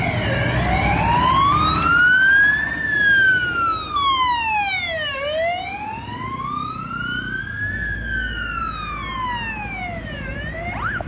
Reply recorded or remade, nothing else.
recorded